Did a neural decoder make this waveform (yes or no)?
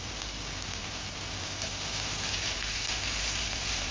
no